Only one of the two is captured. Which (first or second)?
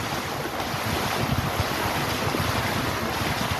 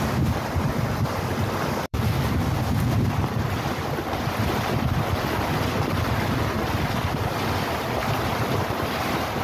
first